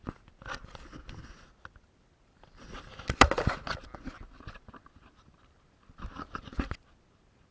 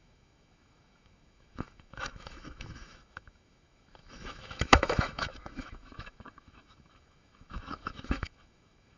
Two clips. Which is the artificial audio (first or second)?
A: second